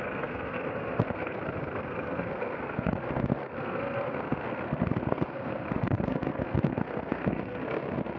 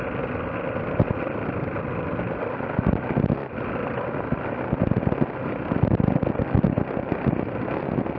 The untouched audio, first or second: second